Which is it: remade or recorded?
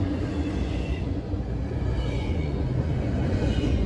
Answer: remade